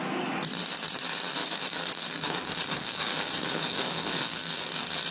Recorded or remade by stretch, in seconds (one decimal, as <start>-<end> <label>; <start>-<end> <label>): 0.0-1.4 recorded; 1.4-4.5 remade; 4.5-5.1 recorded